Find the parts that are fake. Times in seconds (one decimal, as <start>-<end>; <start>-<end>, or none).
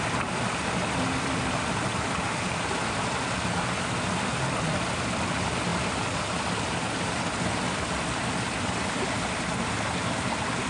none